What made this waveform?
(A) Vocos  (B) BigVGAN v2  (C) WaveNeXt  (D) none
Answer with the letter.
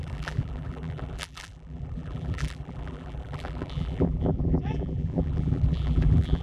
B